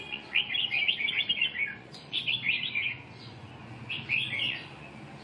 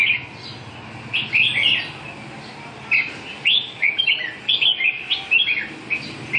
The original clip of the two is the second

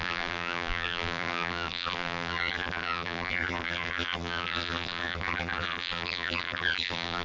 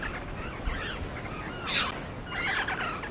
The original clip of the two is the second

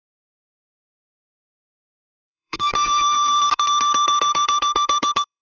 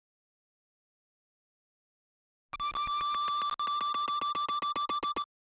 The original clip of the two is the second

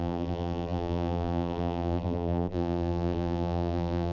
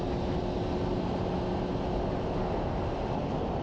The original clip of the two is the second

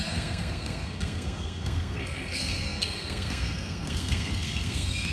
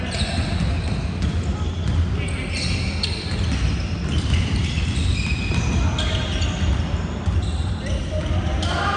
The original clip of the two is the second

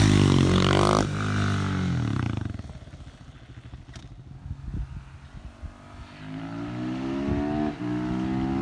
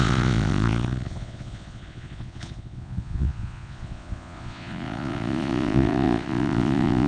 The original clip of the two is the first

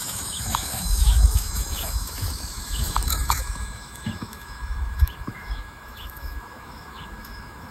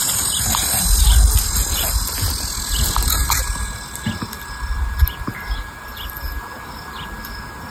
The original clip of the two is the second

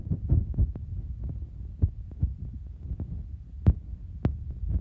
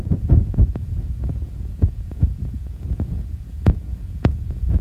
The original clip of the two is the first